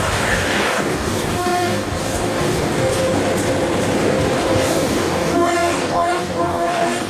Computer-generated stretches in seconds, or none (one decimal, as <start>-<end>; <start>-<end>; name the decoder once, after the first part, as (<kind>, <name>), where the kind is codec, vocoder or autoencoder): 0.0-3.2 (codec, DAC); 4.0-7.1